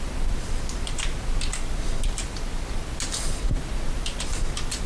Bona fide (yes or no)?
yes